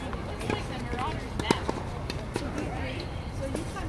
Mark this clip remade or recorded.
recorded